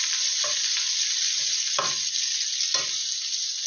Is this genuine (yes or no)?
yes